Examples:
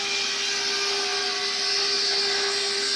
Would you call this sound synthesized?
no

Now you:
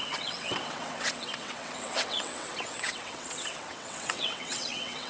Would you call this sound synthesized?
yes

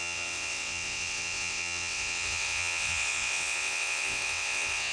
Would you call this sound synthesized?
yes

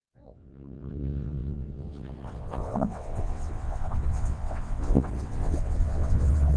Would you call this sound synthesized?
yes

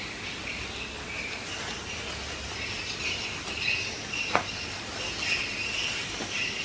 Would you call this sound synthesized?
no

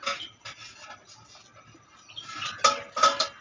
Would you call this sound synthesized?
no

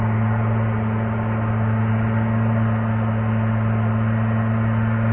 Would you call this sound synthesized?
no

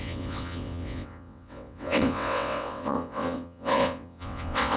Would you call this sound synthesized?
yes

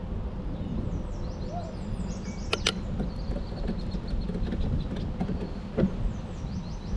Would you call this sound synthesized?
no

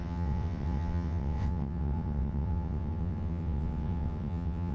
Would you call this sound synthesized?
yes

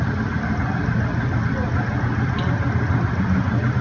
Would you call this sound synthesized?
no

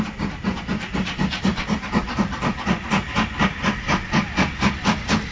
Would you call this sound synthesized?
no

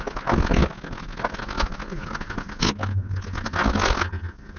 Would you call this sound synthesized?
no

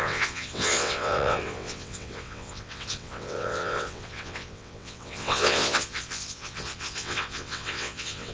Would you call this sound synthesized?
yes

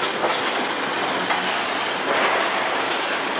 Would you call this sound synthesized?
no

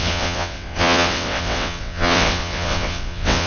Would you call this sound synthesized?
yes